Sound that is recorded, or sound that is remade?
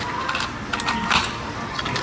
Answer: recorded